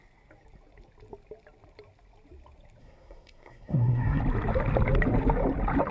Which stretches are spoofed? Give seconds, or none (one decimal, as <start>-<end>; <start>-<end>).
2.8-4.2